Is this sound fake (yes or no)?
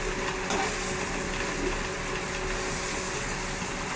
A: no